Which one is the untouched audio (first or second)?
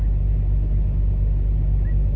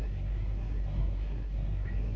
first